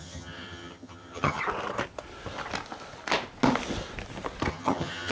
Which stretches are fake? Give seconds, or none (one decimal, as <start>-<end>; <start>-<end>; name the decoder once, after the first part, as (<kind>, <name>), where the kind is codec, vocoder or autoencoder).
0.0-1.4 (vocoder, HiFi-GAN); 4.5-5.1